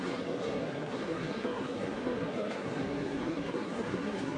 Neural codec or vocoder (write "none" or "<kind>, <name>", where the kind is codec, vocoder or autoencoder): codec, SNAC